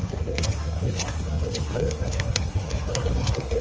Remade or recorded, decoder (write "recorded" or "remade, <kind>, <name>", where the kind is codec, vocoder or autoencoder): remade, codec, SNAC